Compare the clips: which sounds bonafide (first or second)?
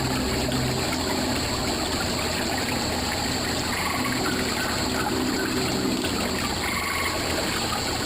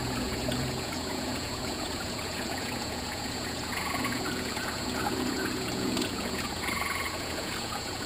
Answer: first